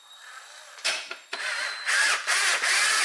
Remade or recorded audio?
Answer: remade